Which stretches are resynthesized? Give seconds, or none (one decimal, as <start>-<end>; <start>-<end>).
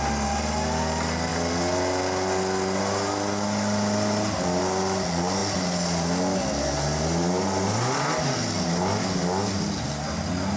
none